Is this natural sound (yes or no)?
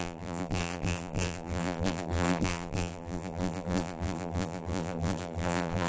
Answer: no